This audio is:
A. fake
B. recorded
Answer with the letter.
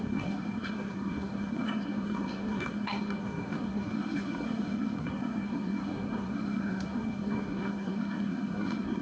A